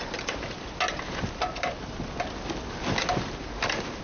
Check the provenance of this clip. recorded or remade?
recorded